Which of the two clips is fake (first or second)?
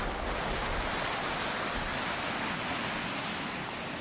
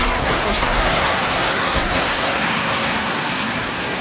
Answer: second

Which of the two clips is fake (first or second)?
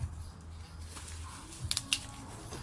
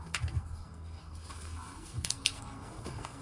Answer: second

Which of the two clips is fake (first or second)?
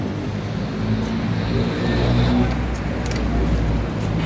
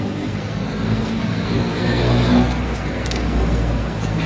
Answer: second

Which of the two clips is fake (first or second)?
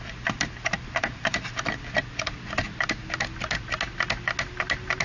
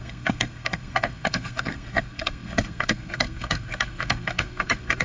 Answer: second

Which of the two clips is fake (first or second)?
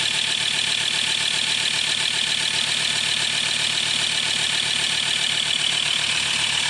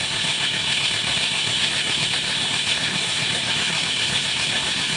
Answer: second